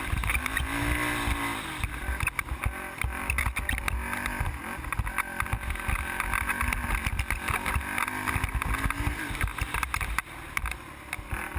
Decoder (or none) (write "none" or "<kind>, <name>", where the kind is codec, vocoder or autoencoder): none